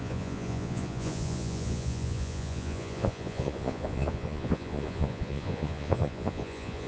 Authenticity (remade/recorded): remade